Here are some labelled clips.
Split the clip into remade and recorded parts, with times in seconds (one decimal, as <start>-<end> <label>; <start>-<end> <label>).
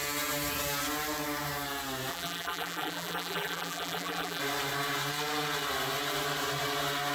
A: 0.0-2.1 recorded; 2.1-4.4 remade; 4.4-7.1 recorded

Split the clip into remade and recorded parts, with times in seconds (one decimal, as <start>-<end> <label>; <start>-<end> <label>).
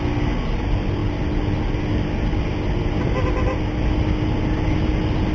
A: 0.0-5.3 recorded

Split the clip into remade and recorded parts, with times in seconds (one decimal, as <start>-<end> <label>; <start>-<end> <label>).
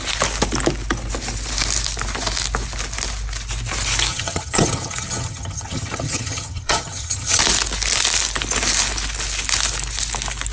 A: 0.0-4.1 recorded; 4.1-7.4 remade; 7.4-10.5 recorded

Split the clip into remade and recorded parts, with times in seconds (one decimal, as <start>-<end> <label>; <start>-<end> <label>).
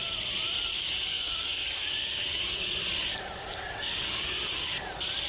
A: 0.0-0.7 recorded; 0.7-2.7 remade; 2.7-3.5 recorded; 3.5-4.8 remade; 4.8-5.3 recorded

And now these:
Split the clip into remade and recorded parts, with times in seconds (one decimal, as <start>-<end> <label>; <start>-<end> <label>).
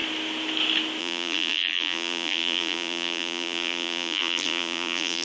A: 0.0-1.0 recorded; 1.0-5.2 remade